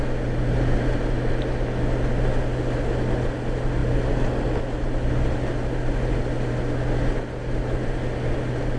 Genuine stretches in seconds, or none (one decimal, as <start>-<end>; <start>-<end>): 0.0-8.8